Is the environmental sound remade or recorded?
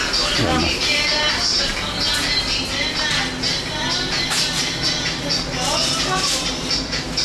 recorded